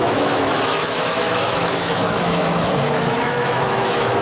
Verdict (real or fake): fake